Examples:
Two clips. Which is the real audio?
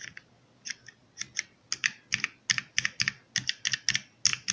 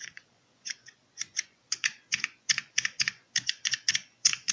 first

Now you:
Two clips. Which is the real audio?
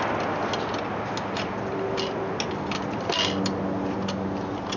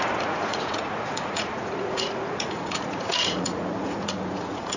first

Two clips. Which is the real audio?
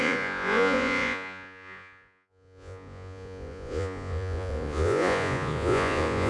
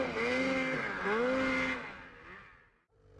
second